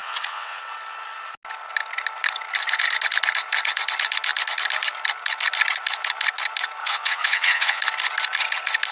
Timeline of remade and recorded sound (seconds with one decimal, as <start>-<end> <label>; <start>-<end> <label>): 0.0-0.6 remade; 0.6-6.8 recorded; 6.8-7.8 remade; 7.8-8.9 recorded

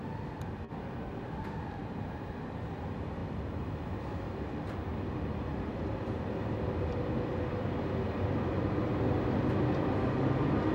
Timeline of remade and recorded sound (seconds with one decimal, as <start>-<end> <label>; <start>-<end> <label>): 0.0-4.9 recorded; 4.9-7.0 remade; 7.0-10.7 recorded

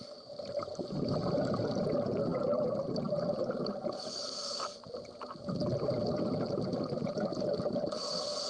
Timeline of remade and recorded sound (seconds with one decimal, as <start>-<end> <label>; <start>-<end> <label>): 0.0-8.5 recorded